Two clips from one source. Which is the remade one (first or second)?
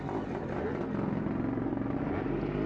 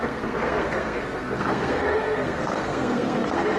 second